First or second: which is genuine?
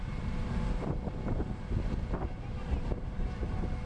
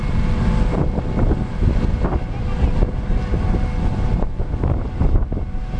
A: second